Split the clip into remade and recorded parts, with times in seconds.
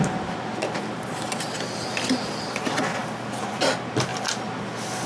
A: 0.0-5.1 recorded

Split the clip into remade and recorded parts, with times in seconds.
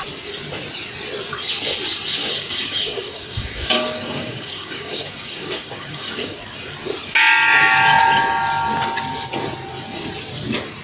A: 0.0-2.2 recorded; 2.2-6.4 remade; 6.4-10.8 recorded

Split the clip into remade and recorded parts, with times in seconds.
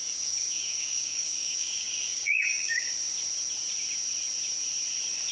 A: 0.0-2.9 remade; 2.9-5.3 recorded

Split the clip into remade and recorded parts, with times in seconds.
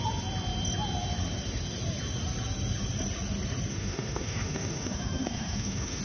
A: 0.0-3.7 recorded; 3.7-6.0 remade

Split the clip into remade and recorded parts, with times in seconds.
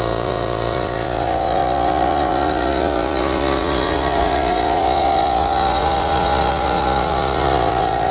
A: 0.0-8.1 remade